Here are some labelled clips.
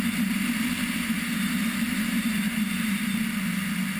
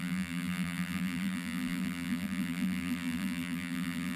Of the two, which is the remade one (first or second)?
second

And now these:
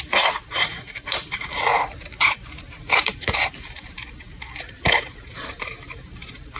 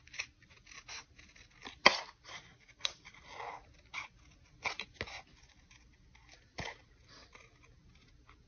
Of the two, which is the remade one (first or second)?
first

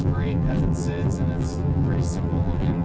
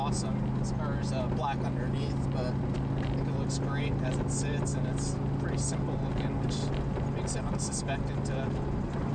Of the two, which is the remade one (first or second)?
first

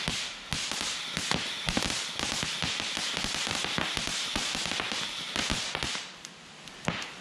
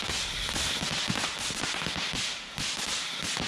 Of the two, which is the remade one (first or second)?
second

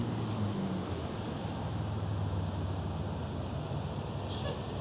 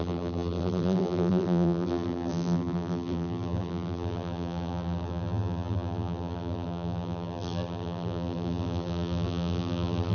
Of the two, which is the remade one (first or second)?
second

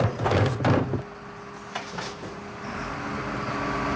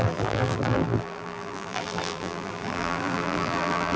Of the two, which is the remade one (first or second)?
second